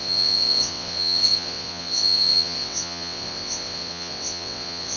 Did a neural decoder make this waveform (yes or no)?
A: yes